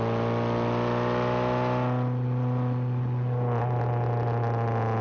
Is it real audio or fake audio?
real